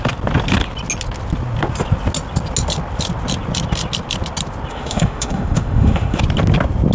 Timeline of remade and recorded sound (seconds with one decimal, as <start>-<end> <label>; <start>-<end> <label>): 0.0-4.7 recorded; 4.7-6.2 remade; 6.2-6.9 recorded